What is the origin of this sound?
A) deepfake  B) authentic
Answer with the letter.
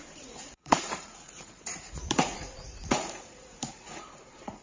A